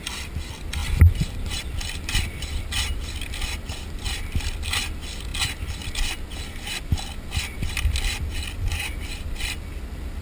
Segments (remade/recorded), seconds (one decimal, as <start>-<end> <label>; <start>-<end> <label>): 0.0-0.8 recorded; 0.8-1.6 remade; 1.6-10.2 recorded